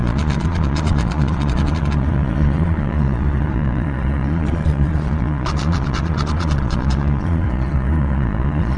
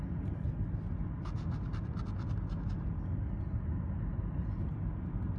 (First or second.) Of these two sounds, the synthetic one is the first